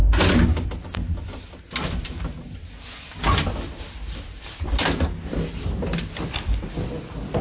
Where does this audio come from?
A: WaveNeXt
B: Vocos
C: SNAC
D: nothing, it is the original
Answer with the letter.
D